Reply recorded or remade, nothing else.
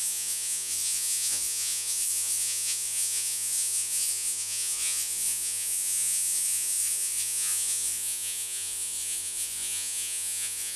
remade